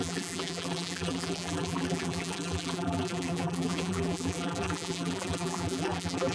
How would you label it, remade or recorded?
remade